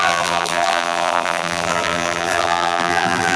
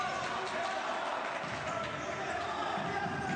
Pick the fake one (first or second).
first